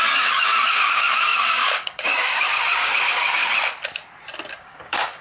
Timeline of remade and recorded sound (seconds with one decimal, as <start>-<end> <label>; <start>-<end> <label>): 0.0-3.4 remade; 3.4-4.6 recorded; 4.6-5.2 remade